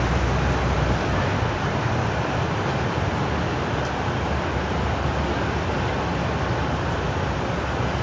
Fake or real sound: real